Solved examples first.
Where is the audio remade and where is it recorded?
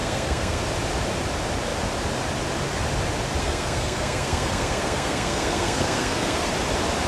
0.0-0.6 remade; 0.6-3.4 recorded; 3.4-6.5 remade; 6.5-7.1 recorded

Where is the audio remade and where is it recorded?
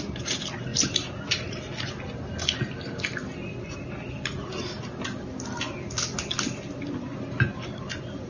0.0-8.3 recorded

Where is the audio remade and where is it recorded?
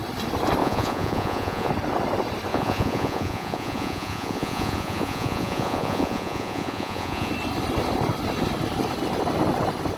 0.0-0.6 recorded; 0.6-1.7 remade; 1.7-2.5 recorded; 2.5-7.3 remade; 7.3-10.0 recorded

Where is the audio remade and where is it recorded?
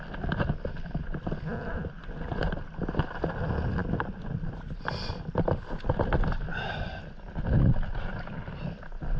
0.0-6.5 recorded; 6.5-7.0 remade; 7.0-9.2 recorded